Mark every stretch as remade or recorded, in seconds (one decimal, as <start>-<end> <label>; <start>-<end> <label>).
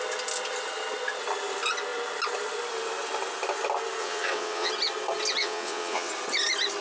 0.0-4.0 recorded; 4.0-4.7 remade; 4.7-5.4 recorded; 5.4-6.1 remade; 6.1-6.8 recorded